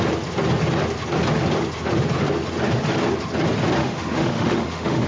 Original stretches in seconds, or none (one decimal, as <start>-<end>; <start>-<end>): 0.0-3.8